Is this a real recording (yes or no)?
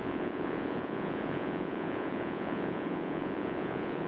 no